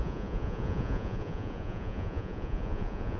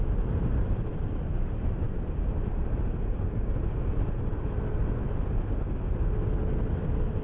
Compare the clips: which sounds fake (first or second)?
first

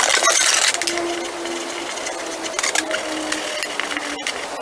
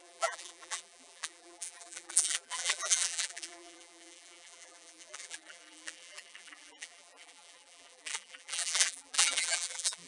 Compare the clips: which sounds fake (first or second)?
second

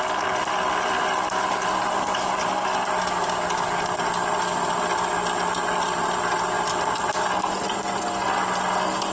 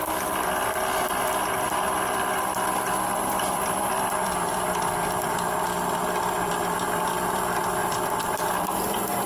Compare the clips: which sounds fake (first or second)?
second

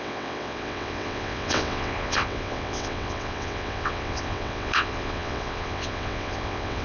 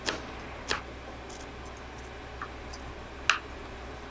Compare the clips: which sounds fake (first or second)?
first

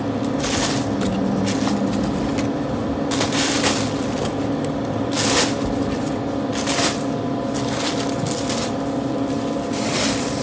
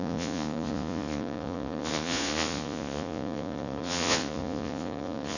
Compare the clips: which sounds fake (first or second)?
second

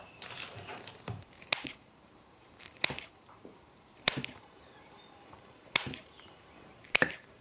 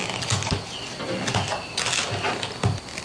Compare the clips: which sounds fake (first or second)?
first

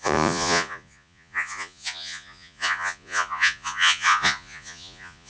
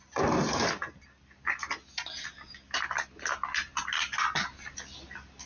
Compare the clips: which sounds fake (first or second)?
first